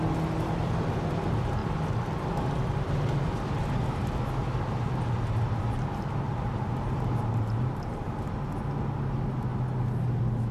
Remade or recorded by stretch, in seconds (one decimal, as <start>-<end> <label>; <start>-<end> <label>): 0.0-4.4 recorded; 4.4-8.0 remade; 8.0-10.5 recorded